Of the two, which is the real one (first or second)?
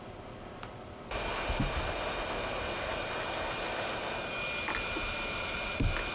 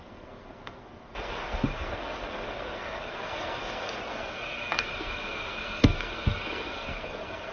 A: first